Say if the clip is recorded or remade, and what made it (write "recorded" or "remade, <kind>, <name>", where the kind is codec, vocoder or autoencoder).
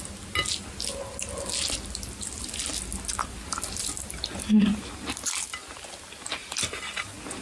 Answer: recorded